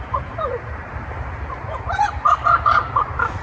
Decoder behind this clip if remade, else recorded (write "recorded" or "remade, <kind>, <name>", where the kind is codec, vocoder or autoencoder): recorded